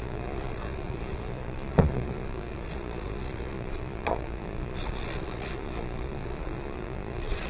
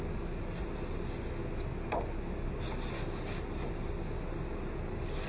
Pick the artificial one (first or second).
first